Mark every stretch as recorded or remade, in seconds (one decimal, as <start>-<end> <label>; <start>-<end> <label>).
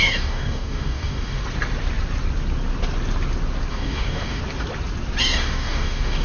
0.0-1.4 remade; 1.4-3.7 recorded; 3.7-4.4 remade; 4.4-5.2 recorded; 5.2-6.2 remade